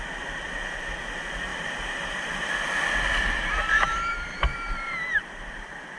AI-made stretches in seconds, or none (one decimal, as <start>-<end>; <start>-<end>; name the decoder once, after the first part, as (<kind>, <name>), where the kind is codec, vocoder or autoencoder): 3.9-5.6 (vocoder, BigVGAN v2)